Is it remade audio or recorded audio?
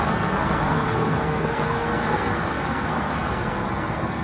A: remade